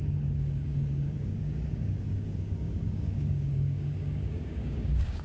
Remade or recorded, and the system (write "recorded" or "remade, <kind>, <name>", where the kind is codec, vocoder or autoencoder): remade, codec, DAC